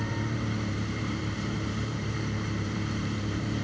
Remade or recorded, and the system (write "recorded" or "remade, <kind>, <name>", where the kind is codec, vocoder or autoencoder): remade, vocoder, BigVGAN v2